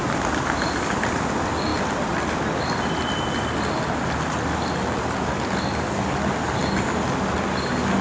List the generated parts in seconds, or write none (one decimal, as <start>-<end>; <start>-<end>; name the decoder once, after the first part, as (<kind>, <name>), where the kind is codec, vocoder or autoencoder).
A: none